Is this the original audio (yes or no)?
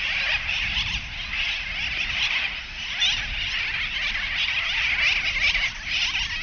yes